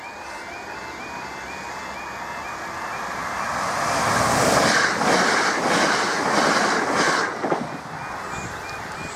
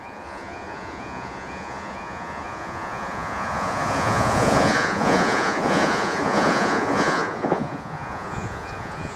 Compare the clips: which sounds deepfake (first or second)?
second